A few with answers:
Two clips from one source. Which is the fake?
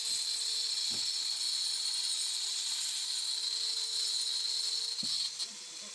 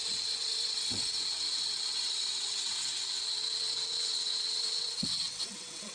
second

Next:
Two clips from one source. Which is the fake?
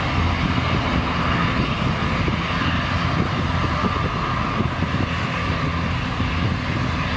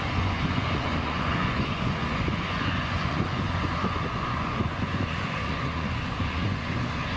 second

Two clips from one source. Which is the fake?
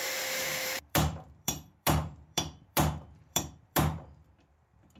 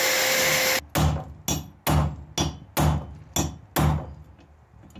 first